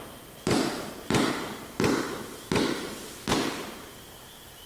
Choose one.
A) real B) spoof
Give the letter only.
A